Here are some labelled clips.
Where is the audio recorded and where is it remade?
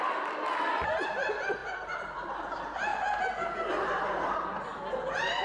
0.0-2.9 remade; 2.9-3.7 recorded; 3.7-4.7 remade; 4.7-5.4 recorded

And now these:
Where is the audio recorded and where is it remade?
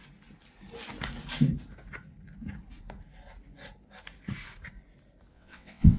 0.0-5.3 recorded; 5.3-6.0 remade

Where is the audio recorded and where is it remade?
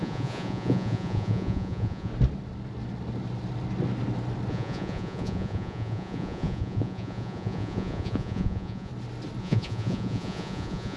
0.0-2.1 remade; 2.1-4.5 recorded; 4.5-8.9 remade; 8.9-9.4 recorded; 9.4-11.0 remade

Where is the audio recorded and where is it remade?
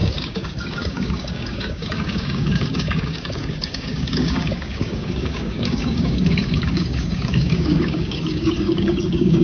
0.0-9.4 remade